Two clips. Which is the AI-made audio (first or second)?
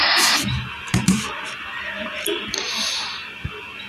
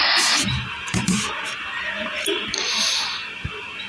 second